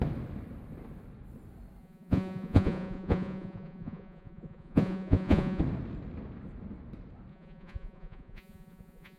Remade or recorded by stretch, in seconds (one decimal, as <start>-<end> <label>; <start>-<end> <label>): 0.0-1.8 recorded; 1.8-5.6 remade; 5.6-7.3 recorded; 7.3-9.2 remade